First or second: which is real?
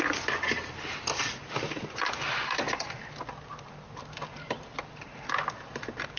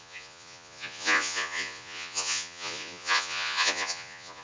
first